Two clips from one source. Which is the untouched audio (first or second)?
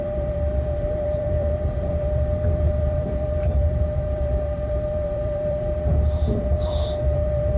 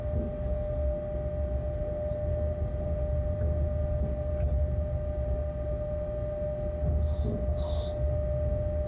second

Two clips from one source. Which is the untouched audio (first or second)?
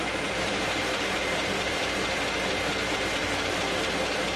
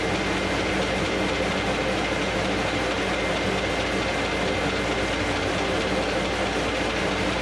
second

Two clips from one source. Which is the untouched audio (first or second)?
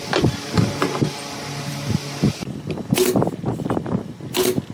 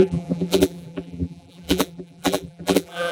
first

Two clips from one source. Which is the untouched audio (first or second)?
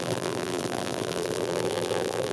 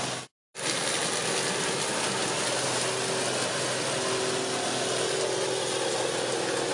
second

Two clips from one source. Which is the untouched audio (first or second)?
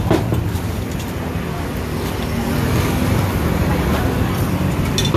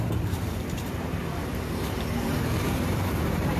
first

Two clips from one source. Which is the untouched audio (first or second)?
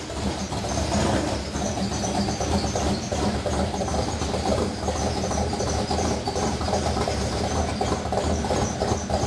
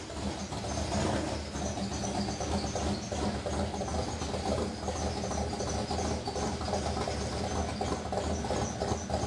second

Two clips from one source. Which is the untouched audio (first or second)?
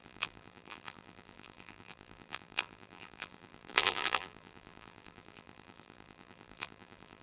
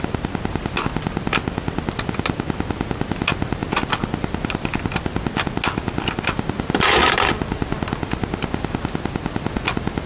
second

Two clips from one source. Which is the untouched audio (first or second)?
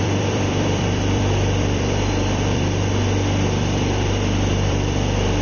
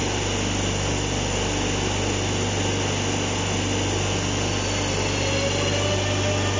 second